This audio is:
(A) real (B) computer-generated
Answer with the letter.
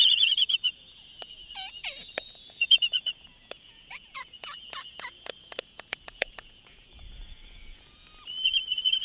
B